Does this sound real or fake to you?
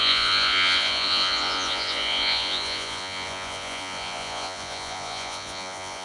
fake